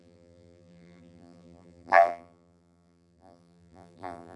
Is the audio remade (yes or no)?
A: yes